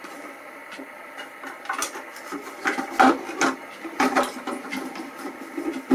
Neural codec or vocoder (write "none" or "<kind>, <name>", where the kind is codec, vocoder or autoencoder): none